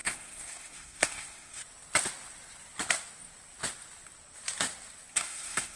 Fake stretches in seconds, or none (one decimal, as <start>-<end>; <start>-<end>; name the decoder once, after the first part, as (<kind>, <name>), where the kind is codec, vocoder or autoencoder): 0.0-1.6 (codec, SNAC); 5.1-5.8